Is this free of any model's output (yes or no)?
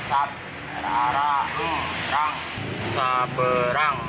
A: yes